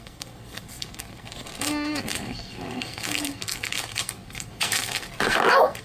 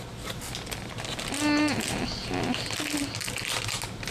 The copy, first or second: first